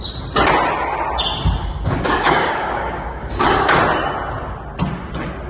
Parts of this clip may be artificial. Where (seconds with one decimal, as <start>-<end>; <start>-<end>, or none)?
1.6-3.8